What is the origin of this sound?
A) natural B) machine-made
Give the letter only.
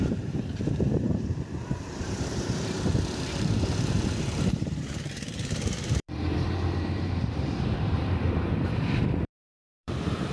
B